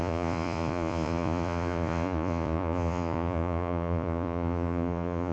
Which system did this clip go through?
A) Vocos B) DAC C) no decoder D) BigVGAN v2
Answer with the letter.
A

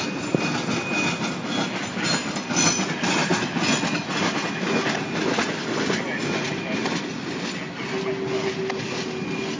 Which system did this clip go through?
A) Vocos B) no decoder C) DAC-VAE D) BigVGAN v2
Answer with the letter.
B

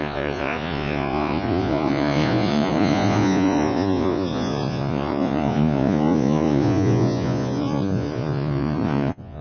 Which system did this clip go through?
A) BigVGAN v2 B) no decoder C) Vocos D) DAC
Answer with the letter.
C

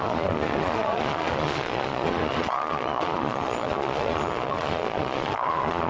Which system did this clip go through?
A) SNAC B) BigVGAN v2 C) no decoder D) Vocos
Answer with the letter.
D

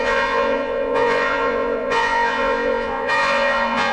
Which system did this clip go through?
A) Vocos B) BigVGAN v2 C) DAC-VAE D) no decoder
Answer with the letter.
A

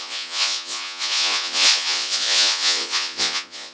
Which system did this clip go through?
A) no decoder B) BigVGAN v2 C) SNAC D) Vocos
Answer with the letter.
D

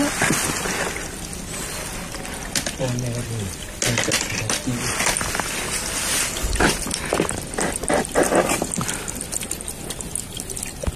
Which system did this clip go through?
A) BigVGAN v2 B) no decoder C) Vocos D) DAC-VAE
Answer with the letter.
B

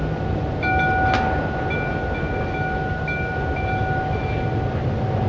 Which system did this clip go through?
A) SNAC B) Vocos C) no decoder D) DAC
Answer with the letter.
C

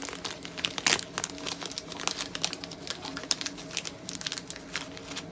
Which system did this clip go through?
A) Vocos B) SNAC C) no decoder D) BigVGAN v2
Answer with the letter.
C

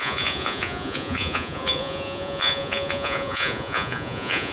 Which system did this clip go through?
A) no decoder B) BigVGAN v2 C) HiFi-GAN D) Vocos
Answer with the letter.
D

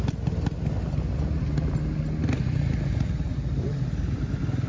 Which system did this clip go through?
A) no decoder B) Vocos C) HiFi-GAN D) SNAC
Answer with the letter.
A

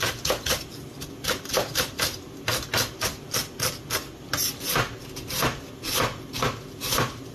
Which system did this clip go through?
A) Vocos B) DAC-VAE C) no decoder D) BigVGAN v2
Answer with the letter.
C